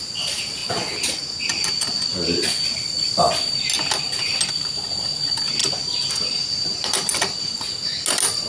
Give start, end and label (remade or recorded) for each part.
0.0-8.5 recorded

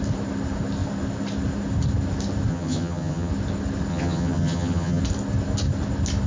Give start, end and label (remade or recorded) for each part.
0.0-2.5 recorded; 2.5-3.3 remade; 3.3-3.9 recorded; 3.9-5.0 remade; 5.0-6.3 recorded

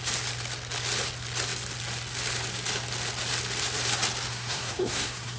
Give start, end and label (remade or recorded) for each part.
0.0-4.3 recorded; 4.3-5.4 remade

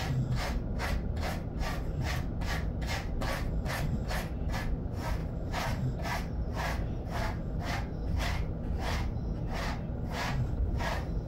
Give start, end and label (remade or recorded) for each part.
0.0-5.2 recorded; 5.2-7.6 remade; 7.6-11.3 recorded

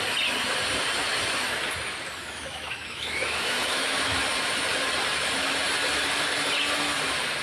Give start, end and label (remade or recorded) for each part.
0.0-2.2 recorded; 2.2-4.2 remade; 4.2-7.4 recorded

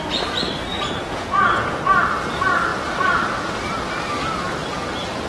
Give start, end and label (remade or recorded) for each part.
0.0-0.7 recorded; 0.7-1.8 remade; 1.8-5.3 recorded

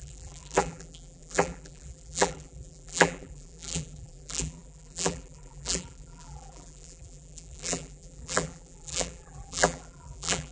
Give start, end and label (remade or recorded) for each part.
0.0-10.5 remade

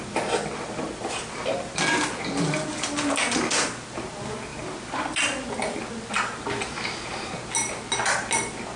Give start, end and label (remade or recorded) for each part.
0.0-8.8 recorded